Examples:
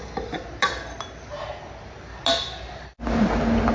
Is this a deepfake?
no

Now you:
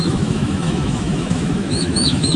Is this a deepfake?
yes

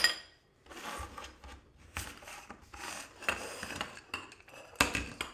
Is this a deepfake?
no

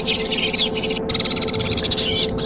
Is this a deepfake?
no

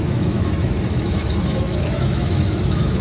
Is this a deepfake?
yes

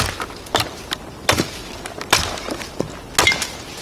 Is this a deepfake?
no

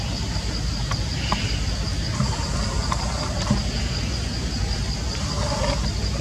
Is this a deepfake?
no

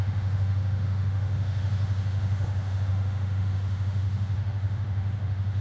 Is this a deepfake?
yes